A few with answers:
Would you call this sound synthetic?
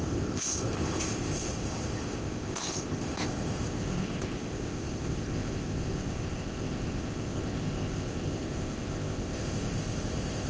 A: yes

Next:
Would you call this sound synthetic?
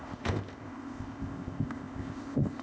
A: yes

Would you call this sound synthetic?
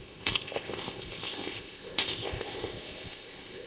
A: yes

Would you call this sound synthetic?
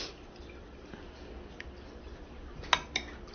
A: no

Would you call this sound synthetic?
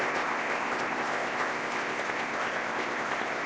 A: yes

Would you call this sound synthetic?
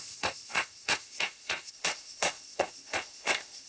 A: yes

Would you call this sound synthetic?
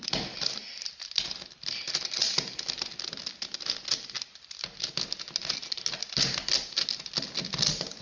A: no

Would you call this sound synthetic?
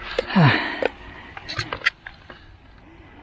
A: no